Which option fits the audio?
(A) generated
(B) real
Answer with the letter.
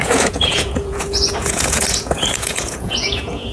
A